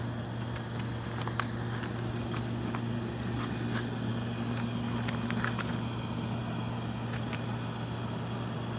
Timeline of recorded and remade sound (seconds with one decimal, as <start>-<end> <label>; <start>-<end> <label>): 0.0-8.8 recorded